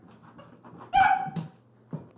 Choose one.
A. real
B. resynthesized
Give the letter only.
A